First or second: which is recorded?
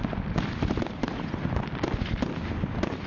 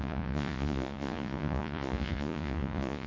first